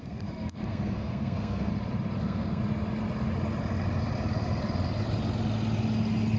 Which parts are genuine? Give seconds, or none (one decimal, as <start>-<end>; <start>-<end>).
1.7-2.2; 2.6-6.4